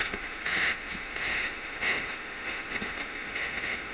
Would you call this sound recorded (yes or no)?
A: no